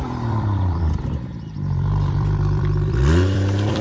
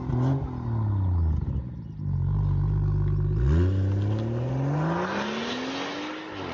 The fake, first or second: first